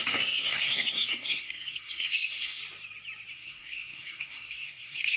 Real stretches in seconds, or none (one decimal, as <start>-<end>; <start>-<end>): 2.6-3.3